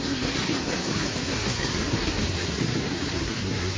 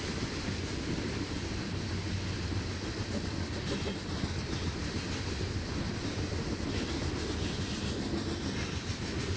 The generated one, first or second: first